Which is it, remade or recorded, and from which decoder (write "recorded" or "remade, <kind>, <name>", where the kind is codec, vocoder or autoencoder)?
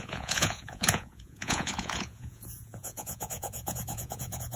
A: remade, vocoder, Vocos